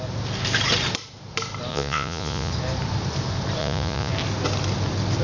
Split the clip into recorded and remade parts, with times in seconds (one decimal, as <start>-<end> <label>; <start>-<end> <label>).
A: 0.0-1.7 recorded; 1.7-2.5 remade; 2.5-3.6 recorded; 3.6-4.1 remade; 4.1-5.2 recorded